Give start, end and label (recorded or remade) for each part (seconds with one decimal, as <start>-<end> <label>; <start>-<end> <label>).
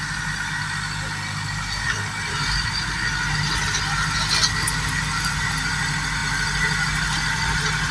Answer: 0.0-7.9 recorded